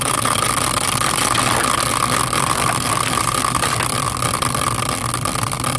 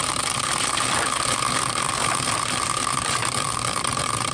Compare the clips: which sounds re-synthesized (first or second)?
second